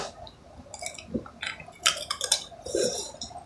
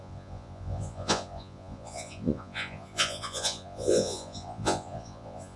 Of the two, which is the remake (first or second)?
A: second